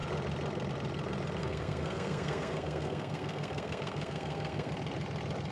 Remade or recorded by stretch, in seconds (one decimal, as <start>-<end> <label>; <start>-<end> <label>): 0.0-1.4 recorded; 1.4-4.7 remade; 4.7-5.5 recorded